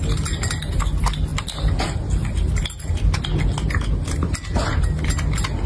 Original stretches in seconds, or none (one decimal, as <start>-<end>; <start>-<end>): 0.0-5.7